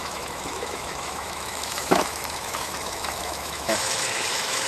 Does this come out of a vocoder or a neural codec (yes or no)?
yes